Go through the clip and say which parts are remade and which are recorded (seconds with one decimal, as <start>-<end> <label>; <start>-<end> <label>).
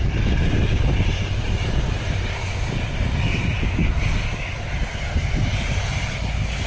0.0-6.7 recorded